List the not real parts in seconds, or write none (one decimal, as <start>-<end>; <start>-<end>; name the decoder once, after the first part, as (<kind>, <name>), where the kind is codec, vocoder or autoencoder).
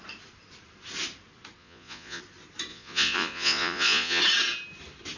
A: 1.6-2.2 (vocoder, Vocos); 2.7-4.2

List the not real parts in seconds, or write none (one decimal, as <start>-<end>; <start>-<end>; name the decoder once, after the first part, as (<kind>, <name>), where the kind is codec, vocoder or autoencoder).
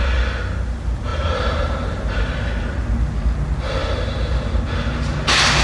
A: 1.1-2.5 (vocoder, BigVGAN v2); 3.8-4.5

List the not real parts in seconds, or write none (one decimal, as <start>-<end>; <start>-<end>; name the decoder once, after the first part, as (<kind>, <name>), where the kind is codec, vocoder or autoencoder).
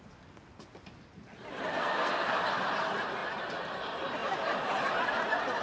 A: 1.8-2.3 (codec, SNAC)